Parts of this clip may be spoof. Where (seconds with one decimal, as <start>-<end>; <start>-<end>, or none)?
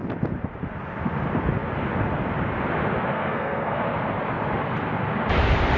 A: 3.1-3.8